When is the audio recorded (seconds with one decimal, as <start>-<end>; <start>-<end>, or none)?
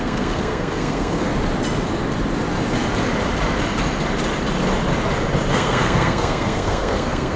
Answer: 1.3-5.5